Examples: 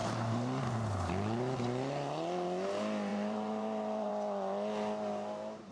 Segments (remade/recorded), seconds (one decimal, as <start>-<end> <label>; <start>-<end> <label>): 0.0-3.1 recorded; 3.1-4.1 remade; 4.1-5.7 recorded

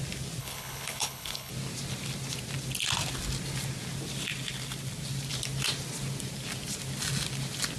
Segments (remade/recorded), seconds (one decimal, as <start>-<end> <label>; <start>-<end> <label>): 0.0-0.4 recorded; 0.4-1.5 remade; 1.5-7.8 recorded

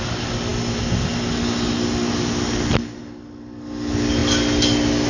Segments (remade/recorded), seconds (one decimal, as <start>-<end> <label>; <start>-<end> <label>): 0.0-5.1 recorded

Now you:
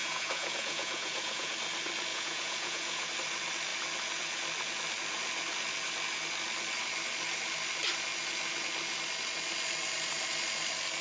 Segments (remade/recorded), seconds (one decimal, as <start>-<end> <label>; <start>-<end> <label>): 0.0-1.5 remade; 1.5-2.1 recorded; 2.1-3.1 remade; 3.1-11.0 recorded

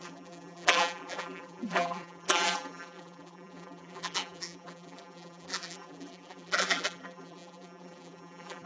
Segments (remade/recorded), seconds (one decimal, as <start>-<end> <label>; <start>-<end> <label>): 0.0-8.7 remade

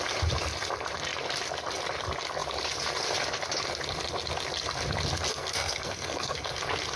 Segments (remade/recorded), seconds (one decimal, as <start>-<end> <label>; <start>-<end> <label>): 0.0-5.3 recorded; 5.3-6.6 remade; 6.6-7.0 recorded